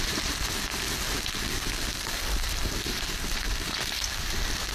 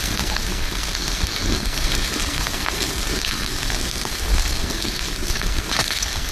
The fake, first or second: second